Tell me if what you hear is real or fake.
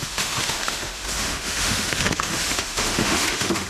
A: fake